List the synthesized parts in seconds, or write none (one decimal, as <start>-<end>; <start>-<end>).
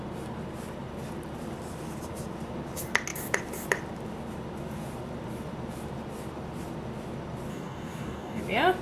7.5-8.4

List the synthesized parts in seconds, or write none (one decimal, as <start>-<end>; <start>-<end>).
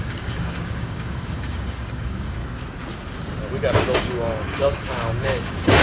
0.0-2.4; 4.0-5.8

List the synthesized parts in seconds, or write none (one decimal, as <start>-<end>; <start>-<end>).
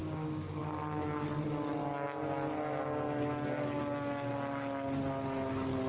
0.0-0.6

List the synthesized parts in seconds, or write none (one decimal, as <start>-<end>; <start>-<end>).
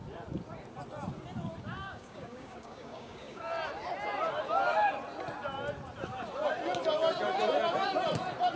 1.8-3.4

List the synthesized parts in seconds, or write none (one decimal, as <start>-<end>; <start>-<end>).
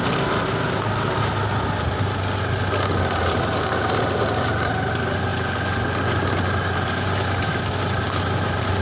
none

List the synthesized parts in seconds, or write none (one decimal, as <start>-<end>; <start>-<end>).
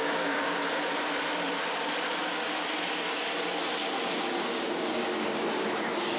0.0-0.6; 4.3-6.2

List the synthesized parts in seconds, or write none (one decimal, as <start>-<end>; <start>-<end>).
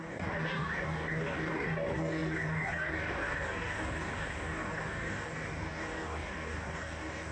0.0-7.3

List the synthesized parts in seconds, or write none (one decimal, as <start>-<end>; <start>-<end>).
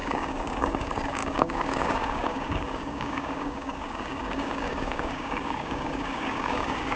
0.0-7.0